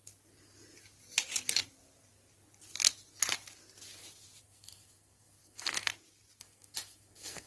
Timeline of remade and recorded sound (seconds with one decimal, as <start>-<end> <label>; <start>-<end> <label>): 0.0-4.4 recorded; 4.4-5.9 remade; 5.9-6.4 recorded; 6.4-7.5 remade